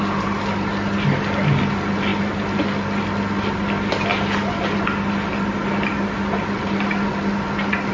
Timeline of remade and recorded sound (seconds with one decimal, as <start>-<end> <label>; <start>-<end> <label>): 0.0-7.9 recorded